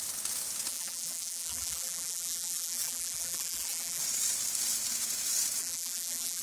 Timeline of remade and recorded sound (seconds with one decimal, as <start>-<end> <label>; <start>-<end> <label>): 0.0-0.7 recorded; 0.7-4.0 remade; 4.0-5.6 recorded; 5.6-6.4 remade

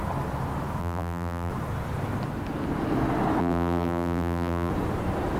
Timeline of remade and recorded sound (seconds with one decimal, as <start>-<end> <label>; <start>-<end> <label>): 0.0-0.8 recorded; 0.8-1.5 remade; 1.5-3.4 recorded; 3.4-4.7 remade; 4.7-5.4 recorded

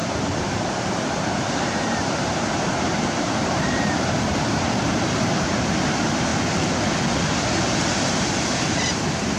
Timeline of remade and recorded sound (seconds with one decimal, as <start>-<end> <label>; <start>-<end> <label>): 0.0-6.3 remade; 6.3-7.8 recorded; 7.8-9.4 remade

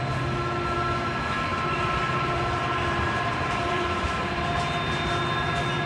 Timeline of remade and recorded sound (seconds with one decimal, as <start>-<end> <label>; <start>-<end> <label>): 0.0-1.5 recorded; 1.5-4.7 remade; 4.7-5.9 recorded

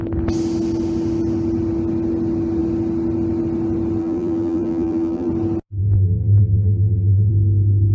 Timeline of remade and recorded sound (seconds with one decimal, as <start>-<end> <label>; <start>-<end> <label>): 0.0-4.0 recorded; 4.0-5.3 remade; 5.3-5.8 recorded; 5.8-7.3 remade; 7.3-7.9 recorded